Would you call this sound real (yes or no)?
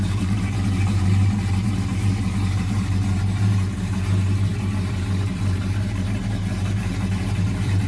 no